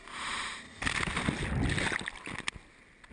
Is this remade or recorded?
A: recorded